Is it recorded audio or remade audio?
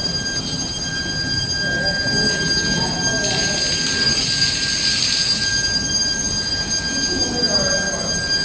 recorded